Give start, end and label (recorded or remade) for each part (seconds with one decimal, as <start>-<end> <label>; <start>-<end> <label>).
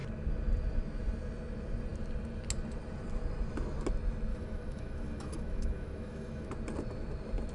0.0-4.3 recorded; 4.3-6.5 remade; 6.5-7.5 recorded